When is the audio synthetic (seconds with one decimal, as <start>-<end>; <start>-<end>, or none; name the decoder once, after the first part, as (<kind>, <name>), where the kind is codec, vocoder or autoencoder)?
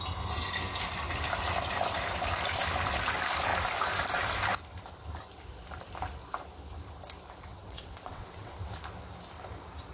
7.5-8.8 (vocoder, WaveNeXt)